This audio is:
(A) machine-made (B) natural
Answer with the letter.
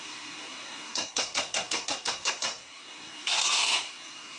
A